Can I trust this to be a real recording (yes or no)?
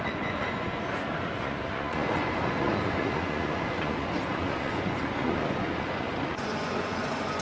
no